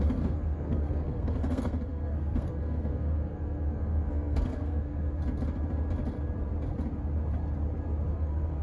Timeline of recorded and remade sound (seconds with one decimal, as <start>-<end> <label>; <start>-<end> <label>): 0.0-5.2 remade; 5.2-8.1 recorded; 8.1-8.6 remade